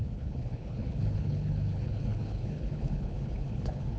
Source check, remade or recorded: remade